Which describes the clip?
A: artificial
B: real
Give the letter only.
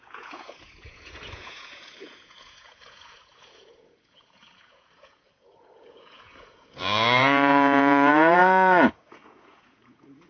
A